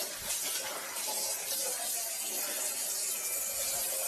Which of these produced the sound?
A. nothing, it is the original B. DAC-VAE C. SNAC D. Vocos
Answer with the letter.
A